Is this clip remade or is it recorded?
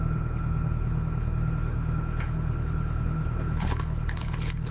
remade